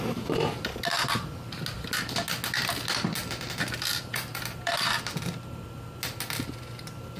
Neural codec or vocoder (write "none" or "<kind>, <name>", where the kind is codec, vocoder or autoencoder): none